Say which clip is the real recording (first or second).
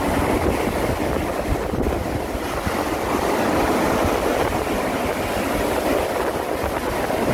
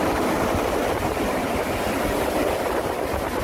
first